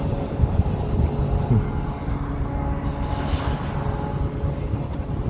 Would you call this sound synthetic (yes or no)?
no